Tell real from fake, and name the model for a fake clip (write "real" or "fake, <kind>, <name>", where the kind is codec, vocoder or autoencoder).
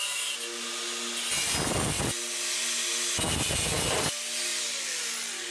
real